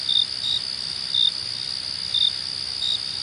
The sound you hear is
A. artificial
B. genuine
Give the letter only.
B